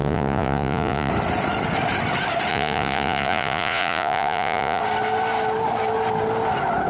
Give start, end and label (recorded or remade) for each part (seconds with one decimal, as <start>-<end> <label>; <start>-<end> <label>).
0.0-1.1 remade; 1.1-2.5 recorded; 2.5-4.8 remade; 4.8-6.9 recorded